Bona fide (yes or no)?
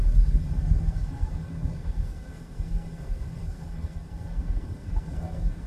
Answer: no